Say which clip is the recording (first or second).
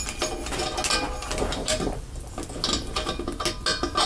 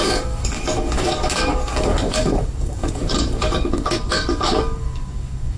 first